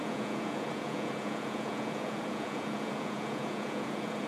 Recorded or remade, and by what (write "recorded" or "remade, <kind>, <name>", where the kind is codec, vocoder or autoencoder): remade, vocoder, Vocos